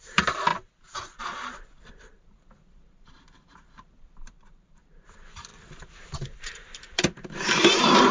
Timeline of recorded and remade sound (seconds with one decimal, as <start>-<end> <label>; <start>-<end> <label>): 0.0-0.5 remade; 0.5-1.2 recorded; 1.2-8.1 remade